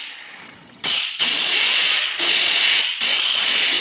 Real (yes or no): no